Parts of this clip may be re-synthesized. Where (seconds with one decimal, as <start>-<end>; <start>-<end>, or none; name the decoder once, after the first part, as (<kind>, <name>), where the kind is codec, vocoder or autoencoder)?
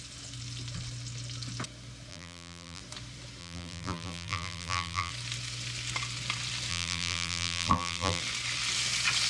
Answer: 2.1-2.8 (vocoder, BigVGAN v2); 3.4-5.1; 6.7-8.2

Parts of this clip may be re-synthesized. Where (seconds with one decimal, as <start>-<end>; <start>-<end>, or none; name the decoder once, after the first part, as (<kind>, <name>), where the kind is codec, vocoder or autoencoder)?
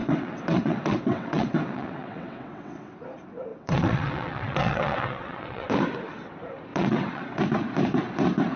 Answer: 0.0-2.9 (vocoder, WaveNeXt); 3.5-5.7; 6.7-7.4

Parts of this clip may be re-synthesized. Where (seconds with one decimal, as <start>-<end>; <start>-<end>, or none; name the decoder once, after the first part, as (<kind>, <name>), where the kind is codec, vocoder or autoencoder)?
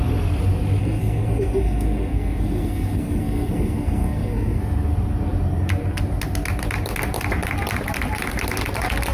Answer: 0.8-4.6 (codec, SNAC)